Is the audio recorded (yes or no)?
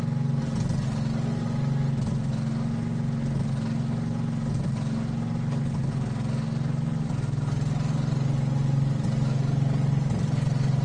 yes